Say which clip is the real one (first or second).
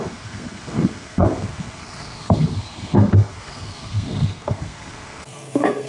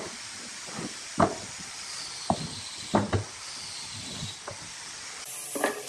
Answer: second